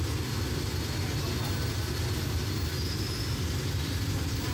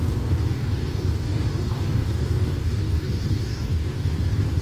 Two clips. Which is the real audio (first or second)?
first